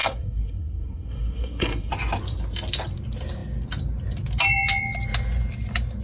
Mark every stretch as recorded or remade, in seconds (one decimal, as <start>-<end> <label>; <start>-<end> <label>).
0.0-1.9 remade; 1.9-6.0 recorded